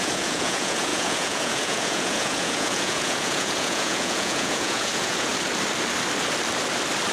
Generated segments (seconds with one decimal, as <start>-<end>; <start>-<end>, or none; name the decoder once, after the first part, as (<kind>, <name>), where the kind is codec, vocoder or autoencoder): 0.0-5.3 (vocoder, Vocos)